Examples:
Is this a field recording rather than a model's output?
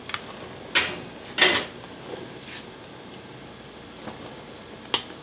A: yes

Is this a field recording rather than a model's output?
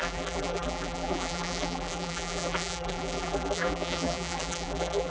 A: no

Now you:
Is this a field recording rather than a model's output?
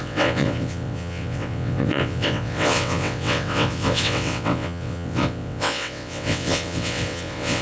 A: no